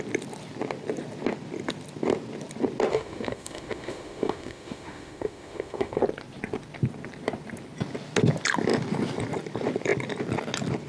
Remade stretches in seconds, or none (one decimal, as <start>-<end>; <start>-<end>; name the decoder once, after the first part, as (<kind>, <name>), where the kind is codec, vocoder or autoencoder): 2.9-6.0 (autoencoder, DAC-VAE)